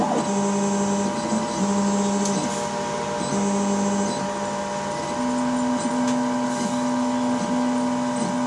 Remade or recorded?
recorded